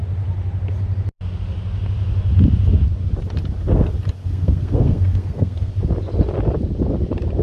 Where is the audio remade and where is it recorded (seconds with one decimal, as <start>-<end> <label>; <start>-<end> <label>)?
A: 0.0-4.2 recorded; 4.2-5.7 remade; 5.7-7.4 recorded